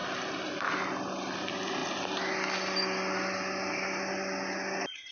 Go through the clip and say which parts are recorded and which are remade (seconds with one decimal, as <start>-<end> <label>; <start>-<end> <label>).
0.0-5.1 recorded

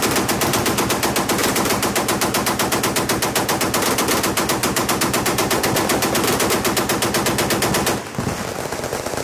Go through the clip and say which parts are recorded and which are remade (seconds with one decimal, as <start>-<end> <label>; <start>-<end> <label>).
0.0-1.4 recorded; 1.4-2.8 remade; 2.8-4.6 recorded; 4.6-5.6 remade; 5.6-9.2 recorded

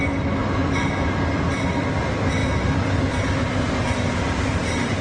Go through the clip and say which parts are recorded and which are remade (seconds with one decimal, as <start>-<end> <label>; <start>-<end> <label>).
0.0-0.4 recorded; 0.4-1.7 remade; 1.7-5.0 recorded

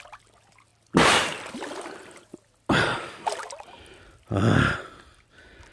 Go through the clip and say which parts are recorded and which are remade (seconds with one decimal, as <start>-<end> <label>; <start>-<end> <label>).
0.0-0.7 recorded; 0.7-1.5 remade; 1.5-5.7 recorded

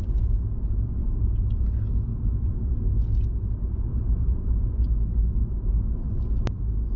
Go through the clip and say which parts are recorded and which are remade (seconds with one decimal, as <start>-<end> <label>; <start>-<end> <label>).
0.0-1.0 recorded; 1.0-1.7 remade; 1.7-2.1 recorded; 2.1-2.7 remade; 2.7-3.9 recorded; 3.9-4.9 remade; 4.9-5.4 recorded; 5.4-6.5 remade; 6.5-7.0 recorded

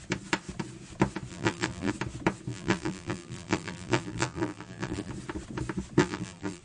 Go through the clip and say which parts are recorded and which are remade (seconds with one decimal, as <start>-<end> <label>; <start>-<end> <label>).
0.0-1.3 recorded; 1.3-1.9 remade; 1.9-2.5 recorded; 2.5-5.1 remade; 5.1-6.0 recorded; 6.0-6.6 remade

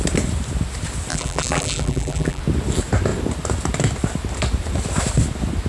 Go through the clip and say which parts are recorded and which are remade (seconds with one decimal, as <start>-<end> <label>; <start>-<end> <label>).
0.0-1.1 recorded; 1.1-2.4 remade; 2.4-5.7 recorded